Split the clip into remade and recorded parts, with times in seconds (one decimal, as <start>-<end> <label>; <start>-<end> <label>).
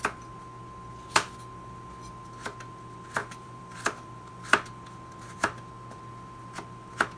0.0-3.2 recorded; 3.2-4.7 remade; 4.7-7.2 recorded